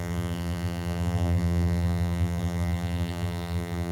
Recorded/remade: remade